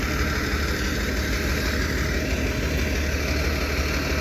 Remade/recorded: recorded